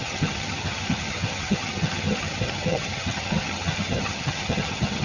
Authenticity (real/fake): fake